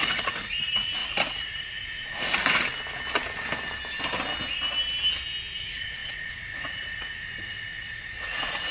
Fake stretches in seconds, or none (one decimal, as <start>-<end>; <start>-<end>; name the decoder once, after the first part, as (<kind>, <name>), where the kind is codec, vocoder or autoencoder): 0.0-2.7 (vocoder, Vocos); 5.6-8.7